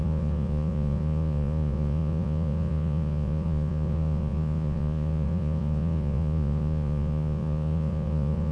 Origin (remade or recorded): remade